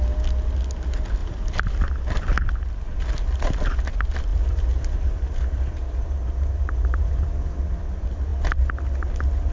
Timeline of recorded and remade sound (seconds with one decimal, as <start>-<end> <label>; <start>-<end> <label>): 0.0-1.2 recorded; 1.2-1.7 remade; 1.7-4.3 recorded; 4.3-7.8 remade; 7.8-9.5 recorded